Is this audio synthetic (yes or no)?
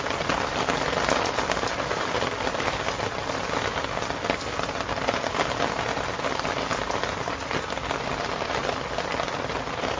no